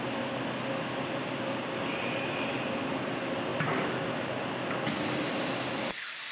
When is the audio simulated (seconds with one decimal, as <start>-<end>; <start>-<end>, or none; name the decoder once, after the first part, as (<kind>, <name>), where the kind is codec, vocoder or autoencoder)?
none